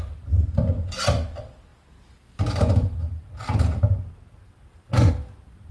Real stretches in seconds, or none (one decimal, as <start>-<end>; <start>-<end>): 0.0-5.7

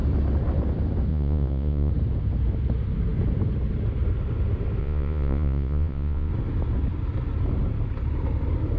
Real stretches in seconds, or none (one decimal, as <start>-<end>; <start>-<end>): 0.0-1.1; 1.9-4.8; 6.3-8.8

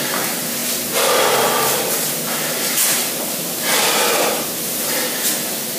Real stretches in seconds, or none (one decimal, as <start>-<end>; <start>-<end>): 0.0-5.8

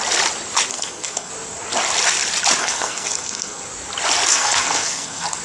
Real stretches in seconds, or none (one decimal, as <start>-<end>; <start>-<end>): 0.0-0.7; 1.3-2.6; 3.6-4.3